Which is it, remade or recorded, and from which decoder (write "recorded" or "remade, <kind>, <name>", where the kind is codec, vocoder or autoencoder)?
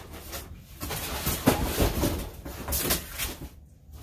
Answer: recorded